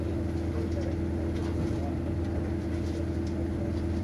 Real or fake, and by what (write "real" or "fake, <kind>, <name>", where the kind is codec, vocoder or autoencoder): real